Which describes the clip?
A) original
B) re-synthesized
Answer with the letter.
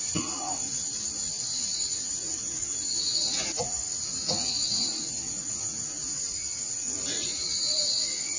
B